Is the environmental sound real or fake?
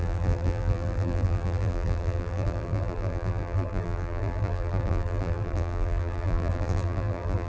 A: fake